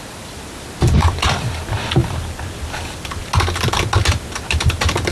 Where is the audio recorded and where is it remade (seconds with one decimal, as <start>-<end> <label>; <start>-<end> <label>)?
0.0-5.1 recorded